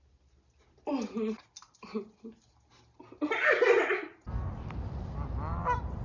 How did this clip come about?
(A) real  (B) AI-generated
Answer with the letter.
A